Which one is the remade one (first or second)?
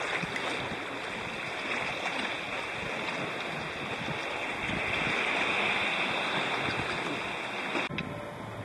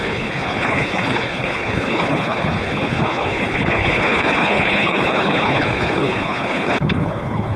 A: second